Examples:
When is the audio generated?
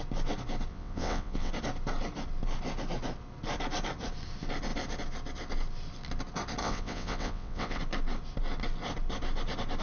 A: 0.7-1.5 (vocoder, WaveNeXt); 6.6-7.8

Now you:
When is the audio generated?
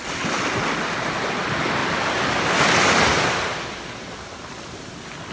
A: none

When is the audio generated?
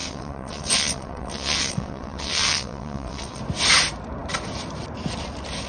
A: 0.0-3.4 (vocoder, WaveNeXt)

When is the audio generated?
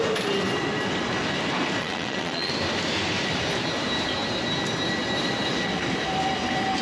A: 1.8-2.5 (vocoder, WaveNeXt)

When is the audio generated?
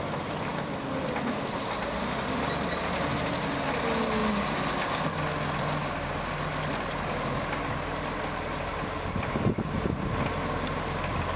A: none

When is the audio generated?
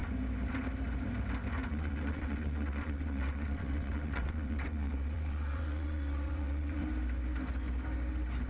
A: 1.7-6.8 (vocoder, WaveNeXt)